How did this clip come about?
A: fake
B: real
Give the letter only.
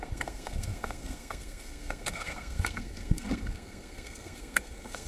A